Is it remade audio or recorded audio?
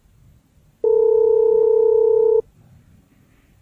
recorded